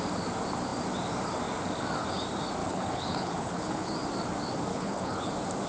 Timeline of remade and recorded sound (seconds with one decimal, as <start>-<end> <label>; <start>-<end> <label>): 0.0-2.6 recorded; 2.6-3.9 remade; 3.9-4.7 recorded; 4.7-5.3 remade; 5.3-5.7 recorded